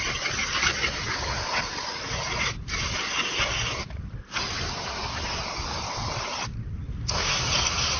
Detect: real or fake real